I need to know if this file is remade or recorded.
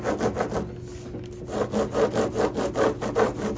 recorded